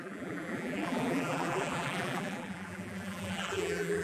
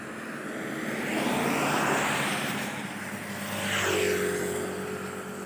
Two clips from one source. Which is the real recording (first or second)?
second